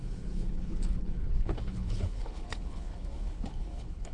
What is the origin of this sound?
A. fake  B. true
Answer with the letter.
A